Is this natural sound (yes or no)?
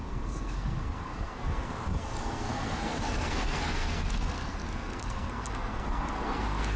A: no